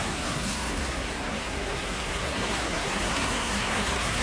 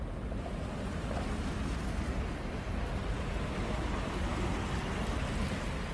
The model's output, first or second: first